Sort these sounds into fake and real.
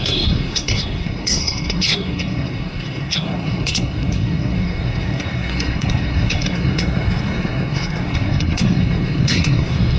fake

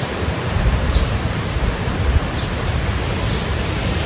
fake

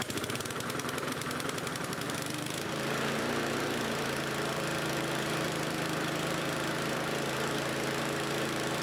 fake